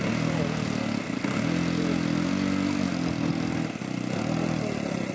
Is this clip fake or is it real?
real